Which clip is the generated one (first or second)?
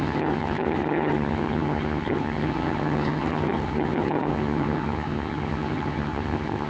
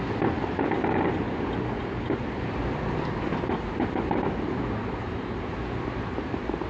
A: first